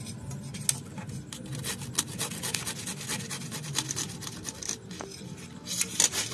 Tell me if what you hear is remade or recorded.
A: recorded